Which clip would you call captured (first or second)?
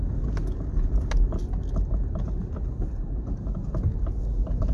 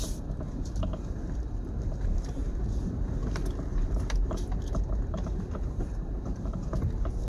first